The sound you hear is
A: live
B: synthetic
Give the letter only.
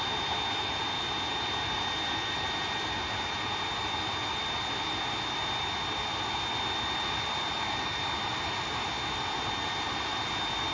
A